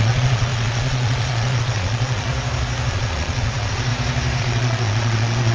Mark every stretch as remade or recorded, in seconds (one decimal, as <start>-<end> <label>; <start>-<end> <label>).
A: 0.0-2.3 remade; 2.3-2.9 recorded; 2.9-3.9 remade; 3.9-4.4 recorded; 4.4-5.5 remade